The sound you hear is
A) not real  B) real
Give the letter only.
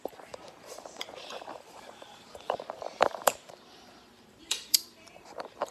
A